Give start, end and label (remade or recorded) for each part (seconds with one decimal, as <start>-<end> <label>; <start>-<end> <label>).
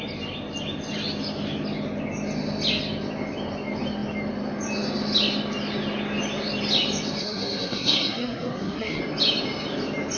0.0-7.2 recorded; 7.2-9.0 remade; 9.0-10.2 recorded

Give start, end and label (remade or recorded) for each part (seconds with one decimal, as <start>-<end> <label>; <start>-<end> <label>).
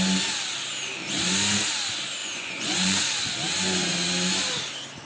0.0-2.2 recorded; 2.2-3.0 remade; 3.0-5.1 recorded